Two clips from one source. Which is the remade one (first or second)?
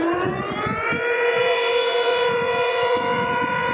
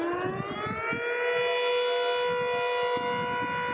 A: first